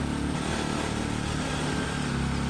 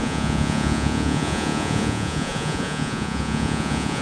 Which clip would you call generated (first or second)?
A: second